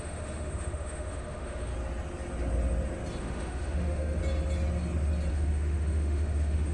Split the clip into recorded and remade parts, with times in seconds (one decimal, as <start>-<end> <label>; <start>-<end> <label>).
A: 0.0-1.7 remade; 1.7-3.2 recorded; 3.2-4.2 remade; 4.2-5.3 recorded; 5.3-6.7 remade